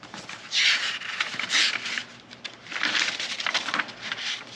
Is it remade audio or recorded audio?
remade